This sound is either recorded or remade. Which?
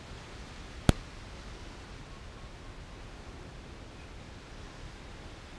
recorded